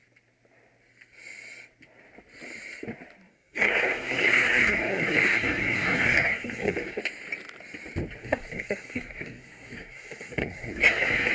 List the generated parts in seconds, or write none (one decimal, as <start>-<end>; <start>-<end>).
3.3-7.0; 8.2-11.3